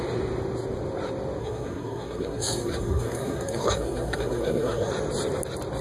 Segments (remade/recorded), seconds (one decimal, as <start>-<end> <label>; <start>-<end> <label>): 0.0-1.4 recorded; 1.4-4.9 remade; 4.9-5.8 recorded